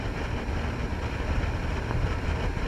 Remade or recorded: recorded